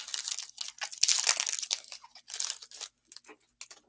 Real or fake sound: real